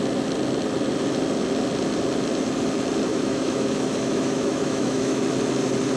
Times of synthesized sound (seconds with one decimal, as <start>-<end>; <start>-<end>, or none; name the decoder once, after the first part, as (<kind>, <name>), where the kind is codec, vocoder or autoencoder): 3.1-5.2 (autoencoder, DAC-VAE)

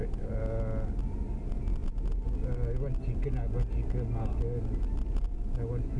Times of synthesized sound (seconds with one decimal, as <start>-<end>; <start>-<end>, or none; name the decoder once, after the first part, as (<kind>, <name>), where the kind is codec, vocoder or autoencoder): none

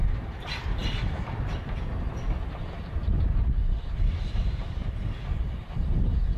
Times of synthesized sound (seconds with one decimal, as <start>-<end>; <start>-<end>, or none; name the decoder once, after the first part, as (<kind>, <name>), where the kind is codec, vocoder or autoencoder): none